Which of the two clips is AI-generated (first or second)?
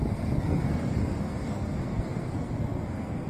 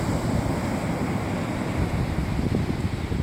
first